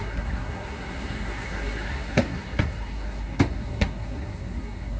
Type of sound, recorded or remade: remade